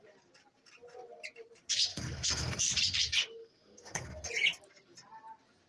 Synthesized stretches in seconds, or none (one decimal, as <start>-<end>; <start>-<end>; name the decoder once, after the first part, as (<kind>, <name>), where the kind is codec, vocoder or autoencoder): 1.9-2.6 (codec, SNAC); 3.4-4.3